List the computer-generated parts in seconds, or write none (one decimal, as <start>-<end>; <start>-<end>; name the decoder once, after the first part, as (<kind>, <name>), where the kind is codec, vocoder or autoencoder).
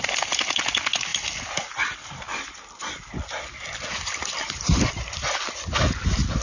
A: none